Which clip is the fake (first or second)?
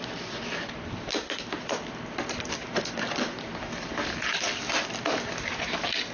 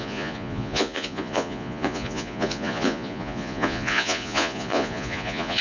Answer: second